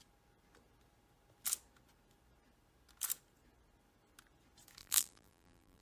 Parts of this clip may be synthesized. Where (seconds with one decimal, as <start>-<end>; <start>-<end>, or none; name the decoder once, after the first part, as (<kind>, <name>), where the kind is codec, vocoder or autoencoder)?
4.8-5.8 (vocoder, BigVGAN v2)